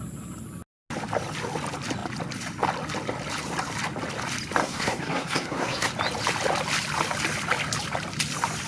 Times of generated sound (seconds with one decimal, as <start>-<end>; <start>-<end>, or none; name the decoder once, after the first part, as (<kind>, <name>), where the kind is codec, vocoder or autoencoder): 4.6-5.9 (codec, SNAC)